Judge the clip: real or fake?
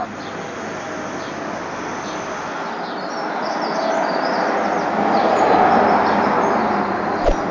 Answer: real